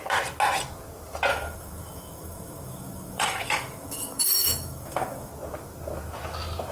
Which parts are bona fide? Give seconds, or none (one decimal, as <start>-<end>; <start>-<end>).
0.0-1.3; 5.3-6.7